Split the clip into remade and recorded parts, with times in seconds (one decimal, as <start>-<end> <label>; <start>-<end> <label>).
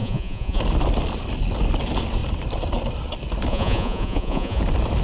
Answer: 0.0-0.6 remade; 0.6-3.5 recorded; 3.5-4.6 remade; 4.6-5.0 recorded